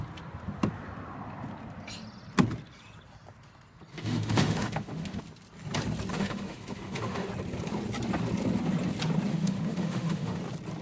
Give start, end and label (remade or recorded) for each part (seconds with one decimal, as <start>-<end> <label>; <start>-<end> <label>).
0.0-3.9 recorded; 3.9-5.2 remade; 5.2-6.1 recorded; 6.1-7.3 remade; 7.3-9.3 recorded; 9.3-10.4 remade; 10.4-10.8 recorded